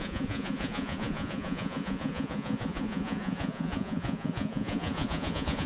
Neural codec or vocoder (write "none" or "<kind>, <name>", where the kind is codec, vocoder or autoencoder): vocoder, Vocos